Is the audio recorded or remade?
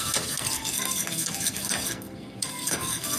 remade